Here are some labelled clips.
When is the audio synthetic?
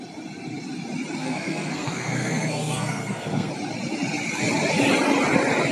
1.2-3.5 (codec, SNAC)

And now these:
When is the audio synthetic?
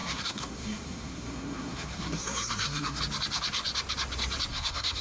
0.0-3.0 (codec, SNAC); 4.5-5.0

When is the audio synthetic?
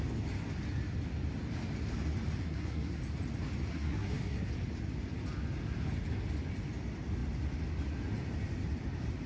2.4-3.0 (codec, SNAC); 3.7-4.5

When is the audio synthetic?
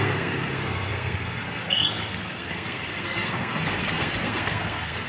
0.0-5.1 (codec, SNAC)